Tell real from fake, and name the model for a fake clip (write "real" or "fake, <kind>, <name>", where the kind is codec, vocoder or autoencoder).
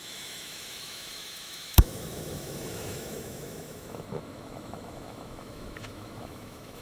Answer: fake, autoencoder, DAC-VAE